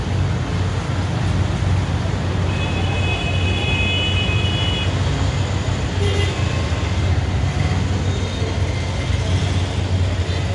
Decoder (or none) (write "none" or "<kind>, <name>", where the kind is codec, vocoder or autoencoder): none